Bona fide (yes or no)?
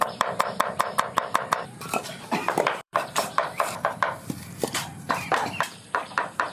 no